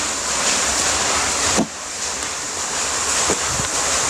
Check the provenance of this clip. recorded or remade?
remade